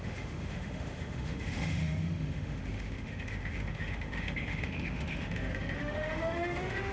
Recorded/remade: remade